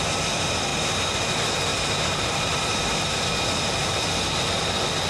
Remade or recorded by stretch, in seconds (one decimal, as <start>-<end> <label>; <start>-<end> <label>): 0.0-0.7 recorded; 0.7-1.2 remade; 1.2-1.7 recorded; 1.7-3.3 remade; 3.3-5.1 recorded